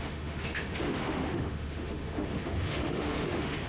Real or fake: fake